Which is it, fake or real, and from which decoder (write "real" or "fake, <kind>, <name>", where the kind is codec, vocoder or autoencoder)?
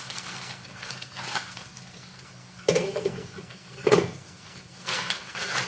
fake, codec, SNAC